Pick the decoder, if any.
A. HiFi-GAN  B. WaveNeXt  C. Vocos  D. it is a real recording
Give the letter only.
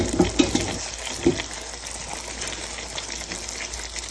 D